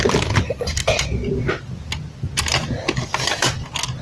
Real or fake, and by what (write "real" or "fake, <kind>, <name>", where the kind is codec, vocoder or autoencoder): real